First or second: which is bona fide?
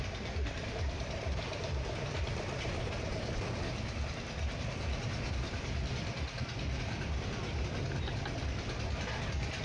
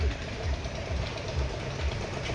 second